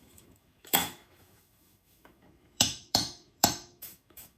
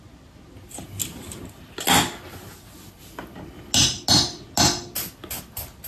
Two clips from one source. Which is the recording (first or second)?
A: second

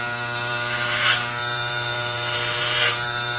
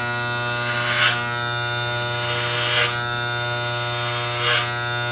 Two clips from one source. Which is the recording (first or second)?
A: second